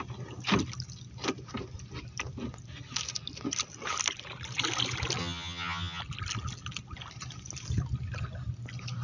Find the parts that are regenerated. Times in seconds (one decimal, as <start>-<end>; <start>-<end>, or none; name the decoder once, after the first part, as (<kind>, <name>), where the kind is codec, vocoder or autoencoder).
5.2-6.0 (vocoder, HiFi-GAN)